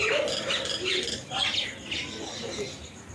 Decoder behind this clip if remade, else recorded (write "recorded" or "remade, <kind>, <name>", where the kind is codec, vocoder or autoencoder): recorded